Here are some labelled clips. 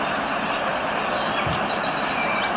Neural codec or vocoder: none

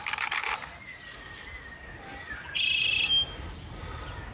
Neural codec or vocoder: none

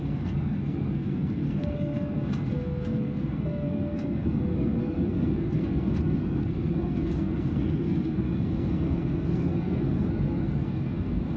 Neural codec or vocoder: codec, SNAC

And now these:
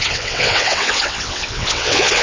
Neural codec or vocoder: vocoder, WaveNeXt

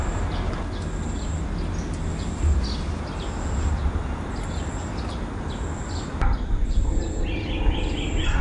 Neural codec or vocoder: none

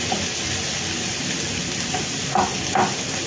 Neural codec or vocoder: none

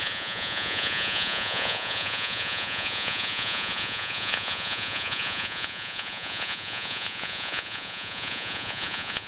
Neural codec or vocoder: vocoder, Vocos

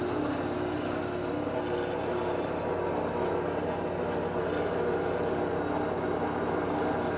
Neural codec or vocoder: none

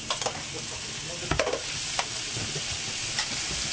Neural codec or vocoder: none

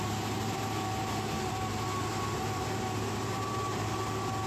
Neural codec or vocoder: none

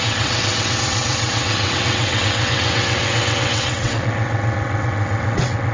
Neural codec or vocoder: vocoder, WaveNeXt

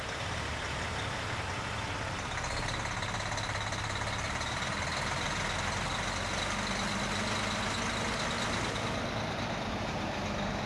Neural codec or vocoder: none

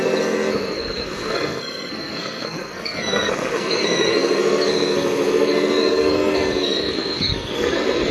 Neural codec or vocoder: codec, SNAC